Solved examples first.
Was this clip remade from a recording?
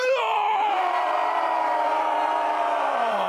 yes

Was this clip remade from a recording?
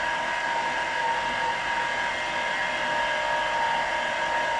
no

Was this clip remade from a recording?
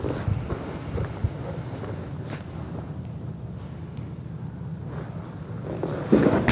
no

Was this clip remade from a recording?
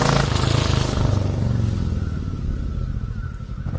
no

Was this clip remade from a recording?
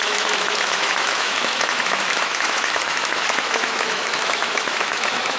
yes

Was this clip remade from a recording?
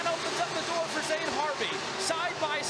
no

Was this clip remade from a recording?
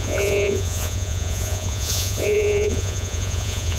yes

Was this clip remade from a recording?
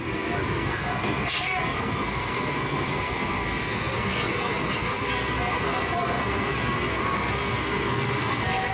yes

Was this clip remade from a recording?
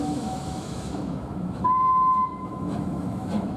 yes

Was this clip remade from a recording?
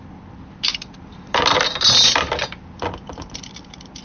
no